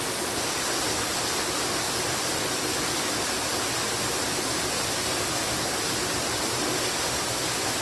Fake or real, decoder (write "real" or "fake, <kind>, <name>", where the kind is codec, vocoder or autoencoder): real